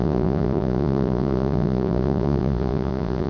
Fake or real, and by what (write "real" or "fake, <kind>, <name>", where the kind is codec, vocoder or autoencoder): fake, vocoder, Vocos